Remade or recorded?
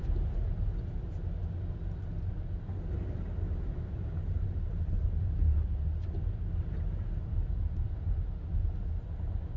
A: recorded